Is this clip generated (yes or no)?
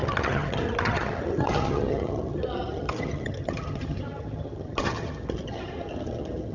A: yes